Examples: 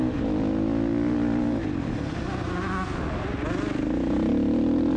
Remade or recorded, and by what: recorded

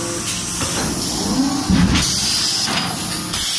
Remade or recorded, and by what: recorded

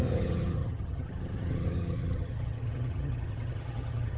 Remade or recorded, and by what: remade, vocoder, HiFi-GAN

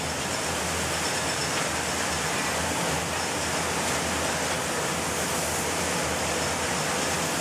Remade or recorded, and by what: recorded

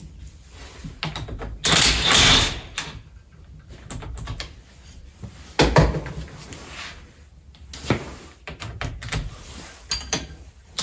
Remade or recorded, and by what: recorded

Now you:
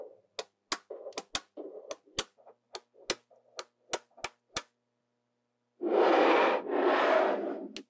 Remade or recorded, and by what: recorded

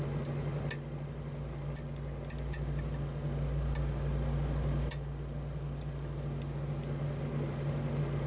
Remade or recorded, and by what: recorded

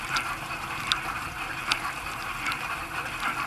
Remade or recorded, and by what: recorded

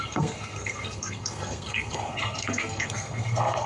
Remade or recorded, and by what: remade, codec, SNAC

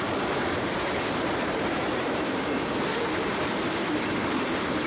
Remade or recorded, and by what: remade, vocoder, BigVGAN v2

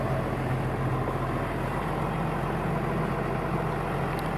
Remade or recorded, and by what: recorded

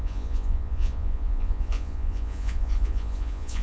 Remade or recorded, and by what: remade, vocoder, Vocos